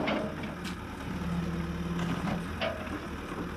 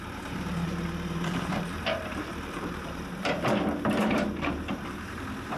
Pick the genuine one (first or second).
first